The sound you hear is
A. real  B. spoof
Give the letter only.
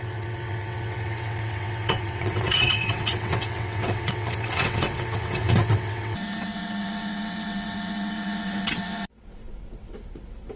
B